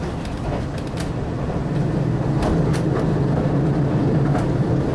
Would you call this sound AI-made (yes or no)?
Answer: no